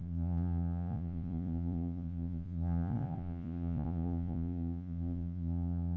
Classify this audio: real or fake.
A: fake